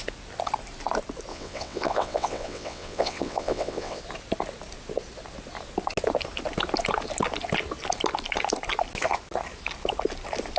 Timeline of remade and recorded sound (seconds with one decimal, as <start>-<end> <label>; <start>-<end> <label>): 0.0-1.3 recorded; 1.3-4.0 remade; 4.0-10.6 recorded